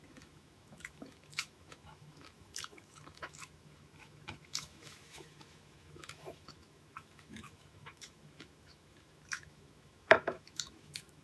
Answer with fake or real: fake